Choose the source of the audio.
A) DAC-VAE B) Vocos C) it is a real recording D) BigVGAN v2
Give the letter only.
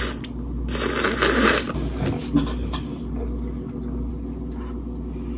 C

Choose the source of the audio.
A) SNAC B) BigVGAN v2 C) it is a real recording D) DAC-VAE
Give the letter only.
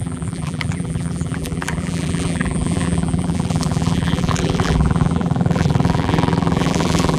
B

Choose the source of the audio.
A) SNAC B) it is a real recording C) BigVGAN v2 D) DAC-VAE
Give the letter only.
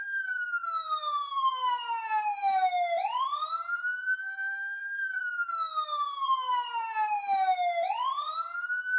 C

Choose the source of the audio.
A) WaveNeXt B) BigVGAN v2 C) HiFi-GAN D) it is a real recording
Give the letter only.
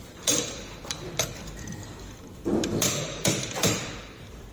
B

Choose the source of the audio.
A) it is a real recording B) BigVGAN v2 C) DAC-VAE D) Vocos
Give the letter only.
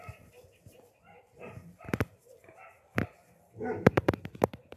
B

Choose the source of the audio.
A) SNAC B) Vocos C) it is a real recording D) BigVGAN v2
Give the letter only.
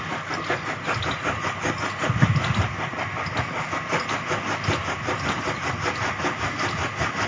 C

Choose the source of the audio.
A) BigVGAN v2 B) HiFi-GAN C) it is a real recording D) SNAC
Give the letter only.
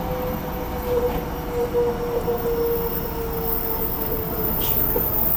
C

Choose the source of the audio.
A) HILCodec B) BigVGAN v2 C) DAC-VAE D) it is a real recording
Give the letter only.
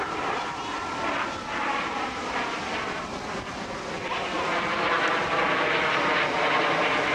D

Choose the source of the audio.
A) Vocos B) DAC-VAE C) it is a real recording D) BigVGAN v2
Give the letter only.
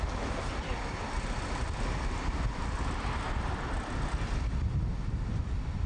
C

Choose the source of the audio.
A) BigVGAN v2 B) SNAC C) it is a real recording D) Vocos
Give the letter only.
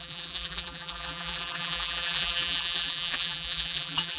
A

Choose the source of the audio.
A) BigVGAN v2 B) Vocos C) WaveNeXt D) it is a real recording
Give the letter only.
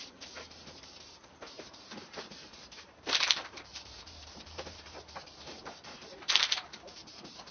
A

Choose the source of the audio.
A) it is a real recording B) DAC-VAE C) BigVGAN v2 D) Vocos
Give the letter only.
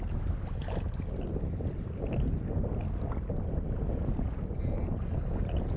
A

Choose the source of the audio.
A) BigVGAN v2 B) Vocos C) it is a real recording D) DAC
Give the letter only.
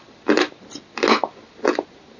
C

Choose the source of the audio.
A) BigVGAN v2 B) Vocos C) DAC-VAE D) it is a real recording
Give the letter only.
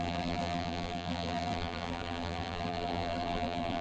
A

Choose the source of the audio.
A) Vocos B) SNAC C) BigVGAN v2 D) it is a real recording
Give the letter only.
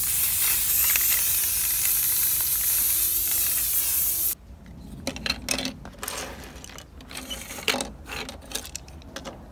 D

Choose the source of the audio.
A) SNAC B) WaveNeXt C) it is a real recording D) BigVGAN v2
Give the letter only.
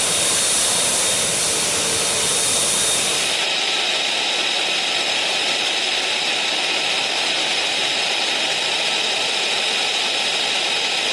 D